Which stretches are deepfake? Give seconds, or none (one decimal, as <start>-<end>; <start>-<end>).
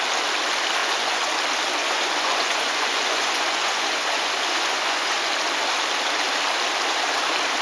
0.8-1.3; 1.8-5.3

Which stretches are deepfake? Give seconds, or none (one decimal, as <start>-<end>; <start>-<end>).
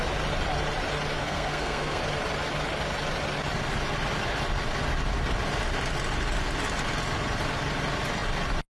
1.2-2.0